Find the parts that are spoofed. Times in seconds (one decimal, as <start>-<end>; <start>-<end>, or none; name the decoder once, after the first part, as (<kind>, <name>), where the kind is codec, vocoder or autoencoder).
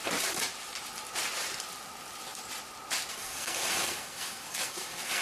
3.1-5.2 (codec, SNAC)